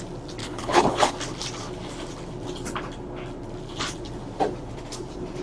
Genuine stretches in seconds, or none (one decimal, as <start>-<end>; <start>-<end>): 0.0-0.4; 1.1-5.4